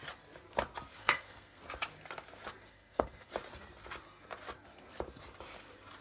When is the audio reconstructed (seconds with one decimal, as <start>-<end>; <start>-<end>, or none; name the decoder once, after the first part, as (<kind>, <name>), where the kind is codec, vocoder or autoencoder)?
1.0-1.6 (codec, SNAC); 2.7-3.3